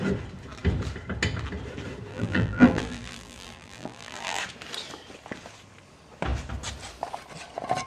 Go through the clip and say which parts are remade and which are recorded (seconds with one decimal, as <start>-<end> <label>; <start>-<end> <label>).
0.0-2.1 recorded; 2.1-4.4 remade; 4.4-7.9 recorded